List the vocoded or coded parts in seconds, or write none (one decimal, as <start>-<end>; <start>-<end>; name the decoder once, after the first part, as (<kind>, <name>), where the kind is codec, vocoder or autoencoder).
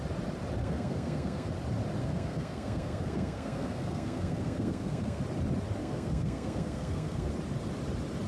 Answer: 0.6-1.5 (codec, SNAC); 2.0-5.2; 5.8-7.3